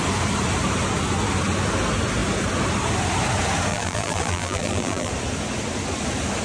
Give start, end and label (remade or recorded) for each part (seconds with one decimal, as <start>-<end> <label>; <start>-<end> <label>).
0.0-3.7 recorded; 3.7-5.1 remade; 5.1-6.4 recorded